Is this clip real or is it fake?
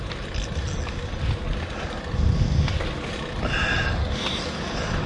real